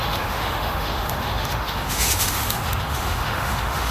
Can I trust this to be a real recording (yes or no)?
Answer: no